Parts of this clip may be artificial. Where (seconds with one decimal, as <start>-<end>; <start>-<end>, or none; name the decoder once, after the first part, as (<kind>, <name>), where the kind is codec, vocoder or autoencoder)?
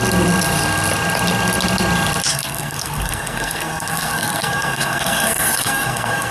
2.3-6.3 (codec, SNAC)